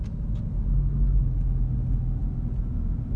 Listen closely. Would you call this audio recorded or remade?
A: recorded